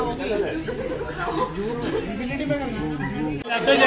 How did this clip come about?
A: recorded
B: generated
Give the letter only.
A